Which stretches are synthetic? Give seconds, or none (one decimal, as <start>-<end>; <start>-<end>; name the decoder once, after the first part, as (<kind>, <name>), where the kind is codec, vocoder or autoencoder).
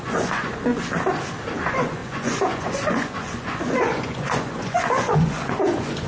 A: 0.0-0.7 (vocoder, Vocos); 1.6-6.1